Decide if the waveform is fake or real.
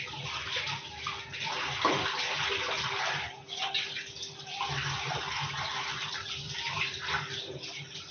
real